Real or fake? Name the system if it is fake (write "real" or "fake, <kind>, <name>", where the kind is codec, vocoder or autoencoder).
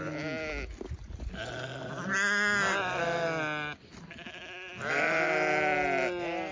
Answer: real